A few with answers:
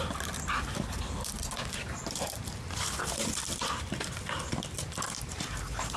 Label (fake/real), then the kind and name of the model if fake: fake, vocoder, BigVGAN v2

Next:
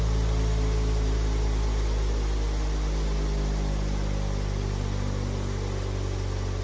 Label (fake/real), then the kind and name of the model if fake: real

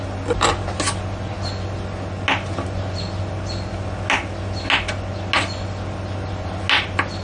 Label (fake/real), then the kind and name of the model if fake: real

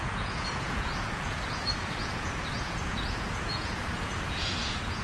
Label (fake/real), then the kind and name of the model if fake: fake, vocoder, Vocos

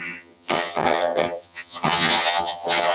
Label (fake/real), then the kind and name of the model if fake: fake, vocoder, HiFi-GAN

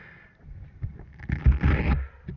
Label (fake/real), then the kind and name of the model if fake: real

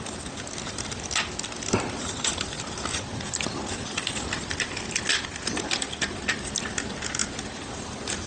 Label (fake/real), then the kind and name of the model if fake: real